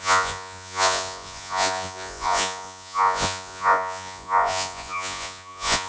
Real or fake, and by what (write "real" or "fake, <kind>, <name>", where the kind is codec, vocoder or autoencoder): fake, vocoder, Vocos